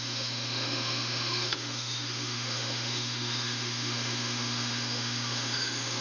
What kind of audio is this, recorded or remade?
remade